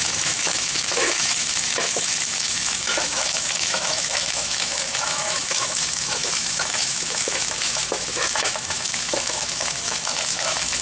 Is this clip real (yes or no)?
no